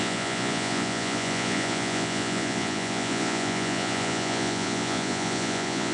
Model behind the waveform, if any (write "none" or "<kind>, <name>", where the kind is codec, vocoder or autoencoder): vocoder, Vocos